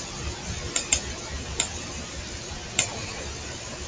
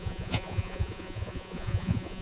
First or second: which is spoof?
second